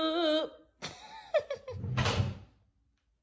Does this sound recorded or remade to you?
recorded